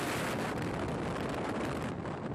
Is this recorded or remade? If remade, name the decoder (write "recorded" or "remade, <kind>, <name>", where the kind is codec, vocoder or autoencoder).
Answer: recorded